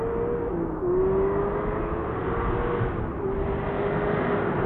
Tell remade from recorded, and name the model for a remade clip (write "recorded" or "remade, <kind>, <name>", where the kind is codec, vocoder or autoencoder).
recorded